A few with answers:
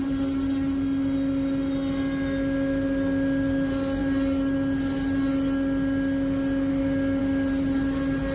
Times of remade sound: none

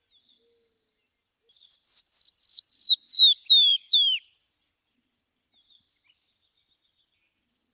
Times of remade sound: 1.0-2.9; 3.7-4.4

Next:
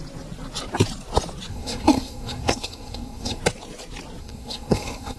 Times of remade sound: 1.5-3.4; 4.2-5.2